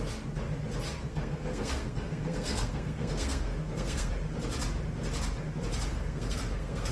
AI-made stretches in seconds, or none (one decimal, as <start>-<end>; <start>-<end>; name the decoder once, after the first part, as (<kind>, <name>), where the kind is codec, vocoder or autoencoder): 1.1-4.1 (codec, SNAC); 5.9-6.9